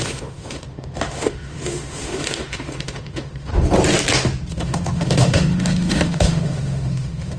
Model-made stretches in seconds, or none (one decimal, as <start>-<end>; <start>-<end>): 0.0-3.5; 4.5-7.4